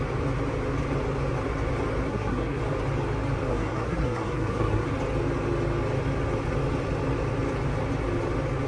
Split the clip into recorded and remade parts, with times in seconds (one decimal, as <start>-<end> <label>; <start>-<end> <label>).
0.0-2.1 recorded; 2.1-2.6 remade; 2.6-3.5 recorded; 3.5-4.9 remade; 4.9-8.7 recorded